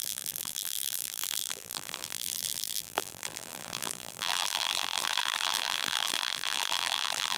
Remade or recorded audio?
remade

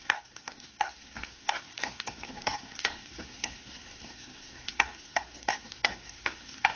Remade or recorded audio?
remade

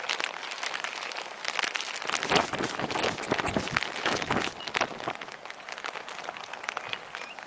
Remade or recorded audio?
recorded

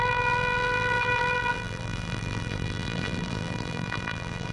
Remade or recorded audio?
remade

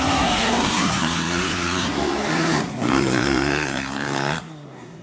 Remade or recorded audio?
remade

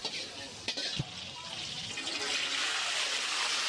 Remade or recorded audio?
recorded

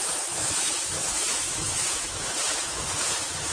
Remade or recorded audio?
remade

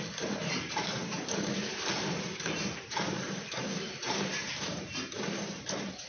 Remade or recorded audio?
remade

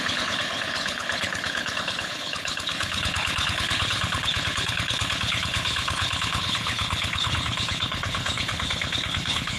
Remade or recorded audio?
remade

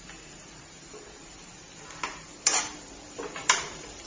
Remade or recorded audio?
recorded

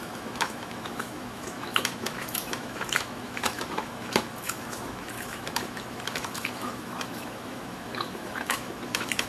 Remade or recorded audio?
remade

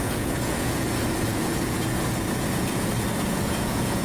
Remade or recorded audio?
remade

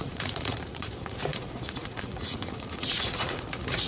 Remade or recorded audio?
remade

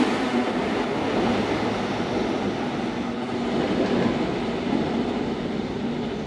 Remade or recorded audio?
recorded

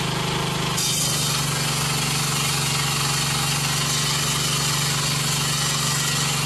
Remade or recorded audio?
recorded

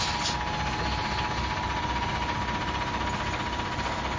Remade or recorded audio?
recorded